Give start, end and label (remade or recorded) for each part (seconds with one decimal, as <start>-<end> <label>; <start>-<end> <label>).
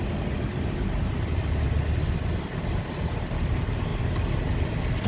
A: 0.0-5.1 recorded